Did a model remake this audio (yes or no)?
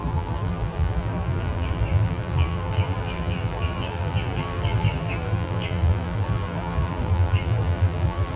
yes